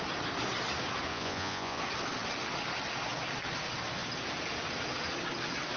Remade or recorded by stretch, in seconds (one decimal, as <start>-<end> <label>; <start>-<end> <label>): 0.0-1.1 recorded; 1.1-1.8 remade; 1.8-5.8 recorded